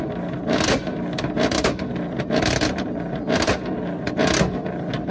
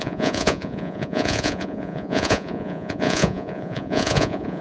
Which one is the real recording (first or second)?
first